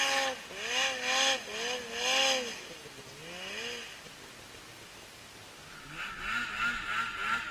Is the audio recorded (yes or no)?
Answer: yes